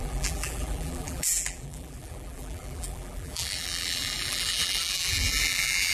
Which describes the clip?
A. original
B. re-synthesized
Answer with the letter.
B